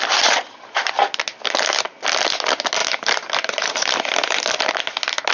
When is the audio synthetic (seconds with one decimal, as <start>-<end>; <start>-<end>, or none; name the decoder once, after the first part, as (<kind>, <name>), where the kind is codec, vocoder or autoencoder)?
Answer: none